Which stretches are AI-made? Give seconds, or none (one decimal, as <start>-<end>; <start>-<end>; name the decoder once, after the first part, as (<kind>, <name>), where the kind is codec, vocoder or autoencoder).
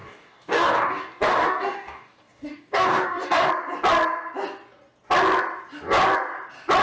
0.0-3.5 (codec, DAC)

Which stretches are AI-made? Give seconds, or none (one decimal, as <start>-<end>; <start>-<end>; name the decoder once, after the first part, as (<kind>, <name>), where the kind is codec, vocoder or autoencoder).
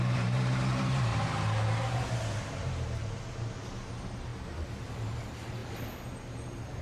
0.0-1.1 (vocoder, BigVGAN v2); 3.9-6.8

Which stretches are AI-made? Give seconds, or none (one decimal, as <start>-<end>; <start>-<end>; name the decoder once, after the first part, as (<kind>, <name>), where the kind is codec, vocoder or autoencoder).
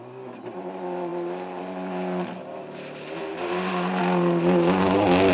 none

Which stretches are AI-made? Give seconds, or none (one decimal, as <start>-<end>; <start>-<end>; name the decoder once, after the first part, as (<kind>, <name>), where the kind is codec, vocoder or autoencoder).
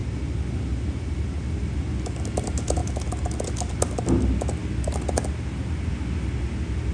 none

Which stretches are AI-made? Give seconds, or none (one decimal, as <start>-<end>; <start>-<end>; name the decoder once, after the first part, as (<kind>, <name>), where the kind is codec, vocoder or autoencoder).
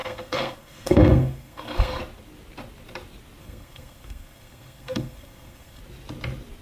0.0-2.0 (codec, SNAC); 3.4-5.8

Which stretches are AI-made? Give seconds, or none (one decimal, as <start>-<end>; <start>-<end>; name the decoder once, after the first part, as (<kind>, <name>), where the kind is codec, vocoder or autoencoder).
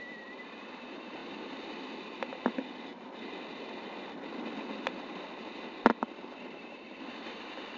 none